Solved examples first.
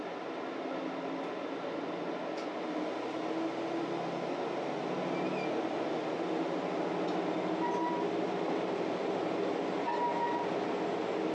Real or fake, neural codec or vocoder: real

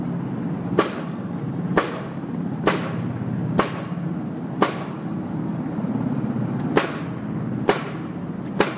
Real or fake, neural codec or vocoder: real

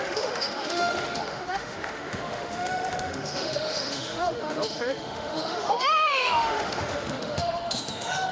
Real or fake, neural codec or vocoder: fake, autoencoder, DAC-VAE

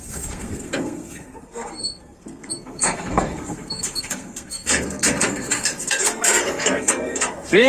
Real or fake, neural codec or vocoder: fake, codec, SNAC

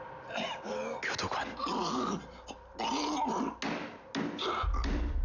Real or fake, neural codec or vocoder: real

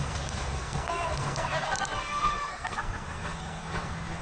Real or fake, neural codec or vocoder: fake, codec, SNAC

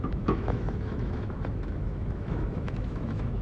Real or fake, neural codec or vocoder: fake, autoencoder, DAC-VAE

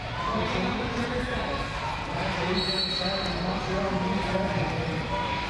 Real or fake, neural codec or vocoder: real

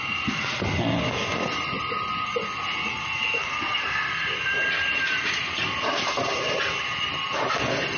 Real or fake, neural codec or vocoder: real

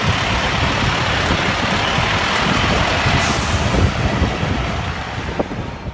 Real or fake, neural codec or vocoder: real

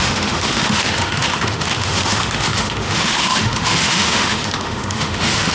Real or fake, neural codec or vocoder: fake, autoencoder, DAC-VAE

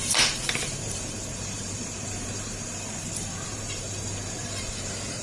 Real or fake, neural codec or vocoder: fake, vocoder, BigVGAN v2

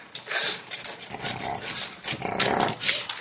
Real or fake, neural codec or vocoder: real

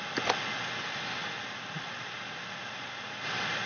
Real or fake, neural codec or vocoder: real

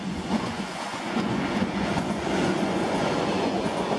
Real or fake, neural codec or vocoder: fake, vocoder, Vocos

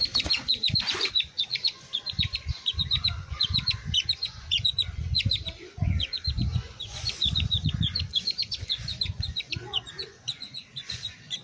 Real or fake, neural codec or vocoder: fake, vocoder, Vocos